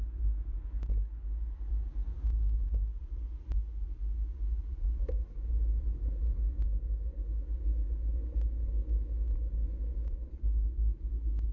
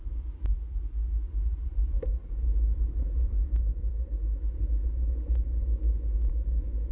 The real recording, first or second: first